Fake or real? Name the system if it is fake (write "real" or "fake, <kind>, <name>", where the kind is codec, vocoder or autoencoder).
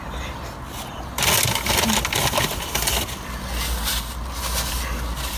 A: real